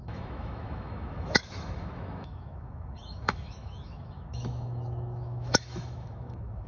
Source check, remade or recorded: remade